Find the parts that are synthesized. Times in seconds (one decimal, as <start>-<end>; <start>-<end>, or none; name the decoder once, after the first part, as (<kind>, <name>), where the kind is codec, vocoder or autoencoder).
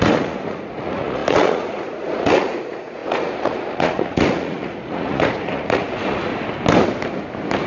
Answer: 0.0-6.3 (vocoder, Vocos)